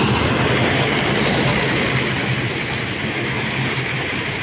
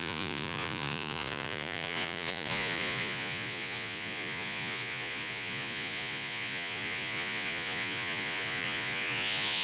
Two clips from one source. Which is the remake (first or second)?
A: second